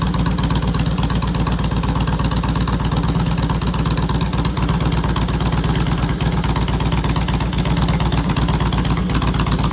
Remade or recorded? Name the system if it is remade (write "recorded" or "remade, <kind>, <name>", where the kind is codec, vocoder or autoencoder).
recorded